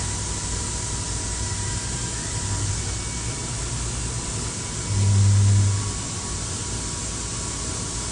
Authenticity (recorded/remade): recorded